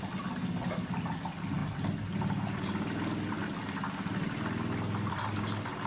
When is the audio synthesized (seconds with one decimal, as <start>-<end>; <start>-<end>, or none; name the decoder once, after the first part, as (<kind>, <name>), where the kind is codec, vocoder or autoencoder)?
none